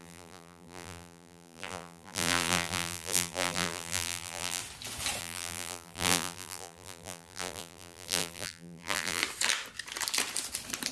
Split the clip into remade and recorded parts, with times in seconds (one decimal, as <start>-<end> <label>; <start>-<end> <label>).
0.0-4.6 remade; 4.6-5.2 recorded; 5.2-9.2 remade; 9.2-10.9 recorded